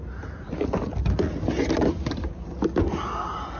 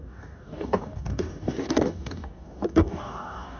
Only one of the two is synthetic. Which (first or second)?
second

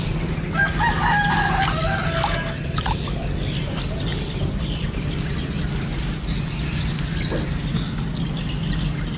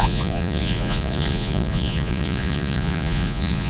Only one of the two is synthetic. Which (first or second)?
second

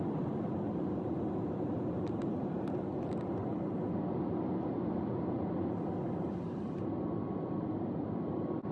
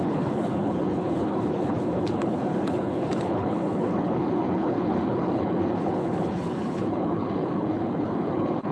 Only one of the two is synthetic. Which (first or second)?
second